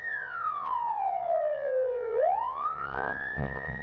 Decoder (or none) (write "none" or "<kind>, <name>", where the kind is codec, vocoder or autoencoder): vocoder, WaveNeXt